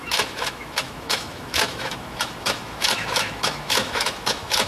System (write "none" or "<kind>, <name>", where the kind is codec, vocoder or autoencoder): autoencoder, DAC-VAE